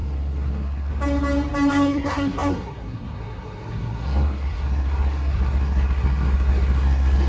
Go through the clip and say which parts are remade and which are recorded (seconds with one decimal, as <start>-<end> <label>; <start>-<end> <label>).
0.0-0.9 remade; 0.9-1.7 recorded; 1.7-7.3 remade